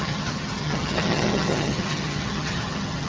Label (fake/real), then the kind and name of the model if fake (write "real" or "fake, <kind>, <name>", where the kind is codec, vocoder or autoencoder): fake, vocoder, HiFi-GAN